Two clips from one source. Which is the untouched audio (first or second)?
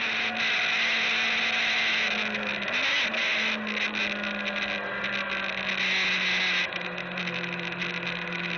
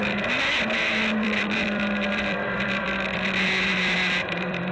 first